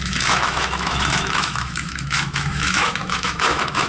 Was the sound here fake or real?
fake